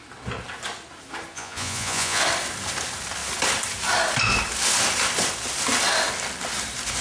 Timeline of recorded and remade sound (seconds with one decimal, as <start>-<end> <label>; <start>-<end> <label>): 0.0-1.3 recorded; 1.3-2.2 remade; 2.2-7.0 recorded